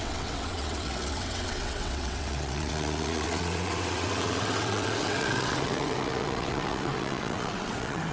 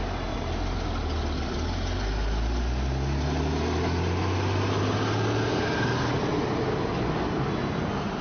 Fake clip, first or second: first